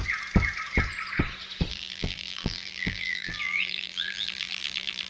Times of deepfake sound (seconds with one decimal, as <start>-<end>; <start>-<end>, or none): 1.7-5.1